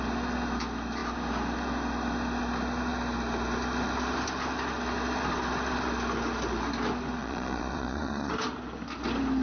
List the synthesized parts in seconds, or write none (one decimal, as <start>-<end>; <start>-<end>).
7.2-8.3